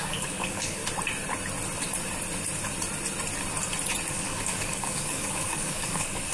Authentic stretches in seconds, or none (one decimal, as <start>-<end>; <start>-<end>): 0.8-4.1